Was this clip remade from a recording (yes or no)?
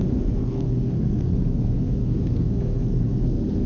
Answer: yes